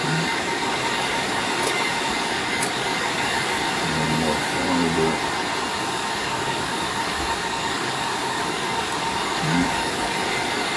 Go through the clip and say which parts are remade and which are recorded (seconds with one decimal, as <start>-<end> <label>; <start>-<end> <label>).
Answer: 0.0-3.6 remade; 3.6-5.8 recorded; 5.8-10.8 remade